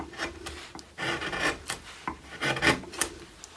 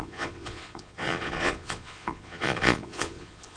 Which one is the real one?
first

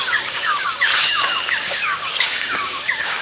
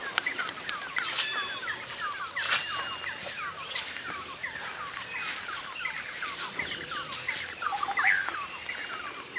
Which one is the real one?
second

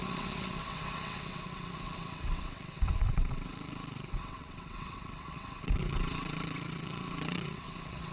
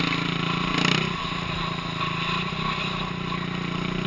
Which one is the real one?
second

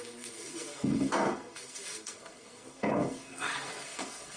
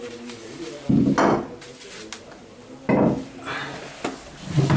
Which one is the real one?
second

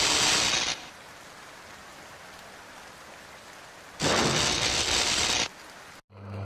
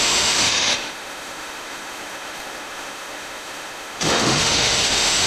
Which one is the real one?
first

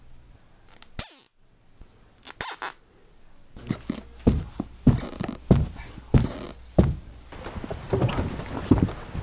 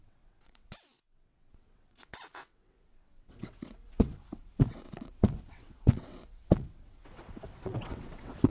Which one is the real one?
first